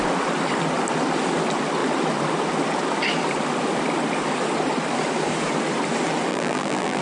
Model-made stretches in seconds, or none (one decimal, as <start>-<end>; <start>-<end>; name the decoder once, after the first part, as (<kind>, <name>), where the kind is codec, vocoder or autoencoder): 6.3-7.0 (vocoder, BigVGAN v2)